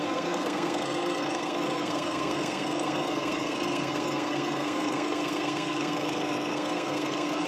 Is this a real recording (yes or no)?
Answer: no